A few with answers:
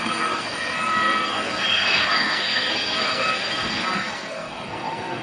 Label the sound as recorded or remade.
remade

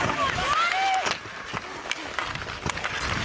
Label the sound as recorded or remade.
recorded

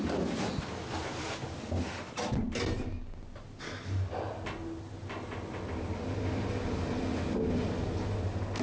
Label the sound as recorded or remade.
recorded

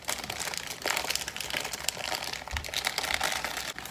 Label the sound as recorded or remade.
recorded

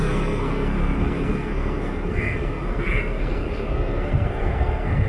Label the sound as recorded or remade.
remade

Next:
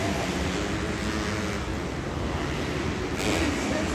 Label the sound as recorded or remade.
recorded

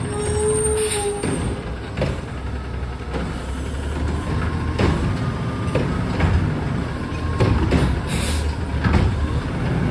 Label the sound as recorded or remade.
recorded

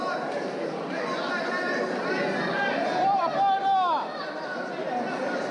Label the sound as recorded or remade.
recorded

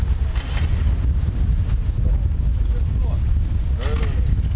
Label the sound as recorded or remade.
recorded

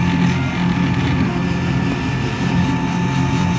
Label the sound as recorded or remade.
recorded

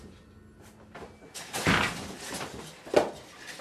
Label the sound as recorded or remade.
recorded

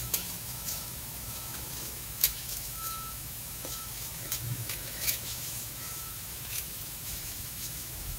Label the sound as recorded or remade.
remade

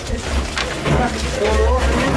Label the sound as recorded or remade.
recorded